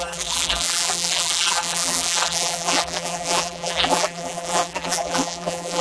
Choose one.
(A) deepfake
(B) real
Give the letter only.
A